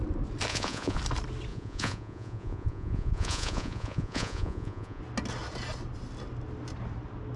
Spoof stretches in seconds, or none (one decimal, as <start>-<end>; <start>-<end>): 0.5-1.0; 1.5-5.0